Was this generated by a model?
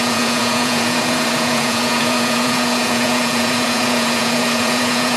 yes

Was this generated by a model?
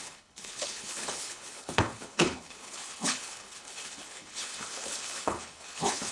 yes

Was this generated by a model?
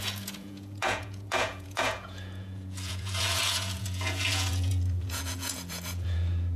yes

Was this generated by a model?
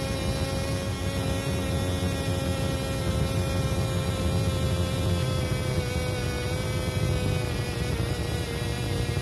no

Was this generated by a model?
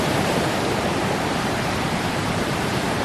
yes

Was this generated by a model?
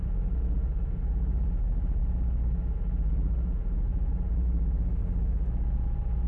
no